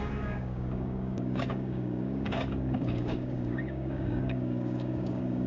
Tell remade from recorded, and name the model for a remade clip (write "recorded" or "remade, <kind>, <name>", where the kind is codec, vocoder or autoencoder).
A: remade, codec, DAC